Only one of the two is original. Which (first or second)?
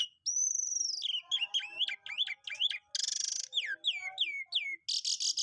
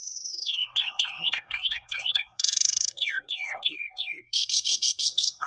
first